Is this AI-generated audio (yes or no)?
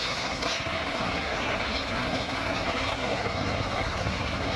yes